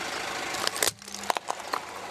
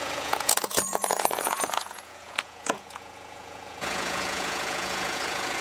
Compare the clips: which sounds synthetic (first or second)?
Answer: second